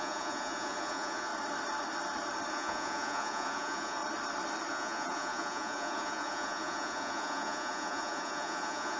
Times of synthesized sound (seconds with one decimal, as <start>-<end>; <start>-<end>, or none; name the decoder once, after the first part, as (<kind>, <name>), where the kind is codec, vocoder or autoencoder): 0.0-1.3 (vocoder, Vocos); 2.5-4.0; 4.7-9.0